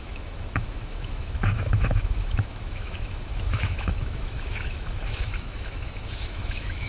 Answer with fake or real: fake